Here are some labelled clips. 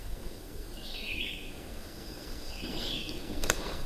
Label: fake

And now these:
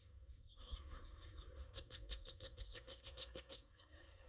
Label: fake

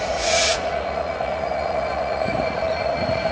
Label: fake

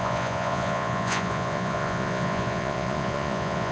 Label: fake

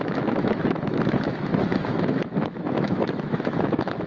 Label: fake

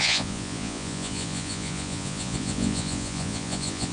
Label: fake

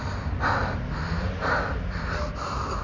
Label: real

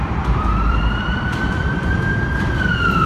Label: fake